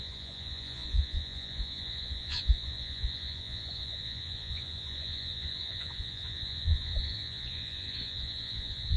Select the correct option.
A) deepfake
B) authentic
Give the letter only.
A